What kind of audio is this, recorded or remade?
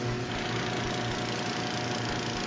recorded